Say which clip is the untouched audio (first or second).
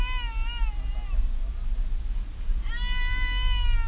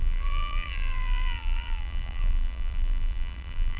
first